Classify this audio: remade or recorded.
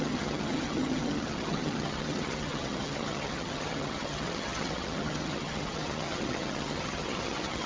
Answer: remade